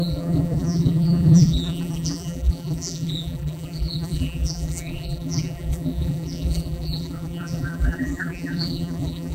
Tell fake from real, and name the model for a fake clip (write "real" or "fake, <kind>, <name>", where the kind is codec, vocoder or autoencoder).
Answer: fake, vocoder, BigVGAN v2